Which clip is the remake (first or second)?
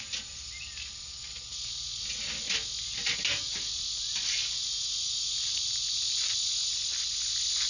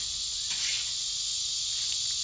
second